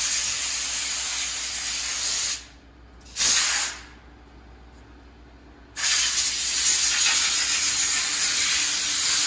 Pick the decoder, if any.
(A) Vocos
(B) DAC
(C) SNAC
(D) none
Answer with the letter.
D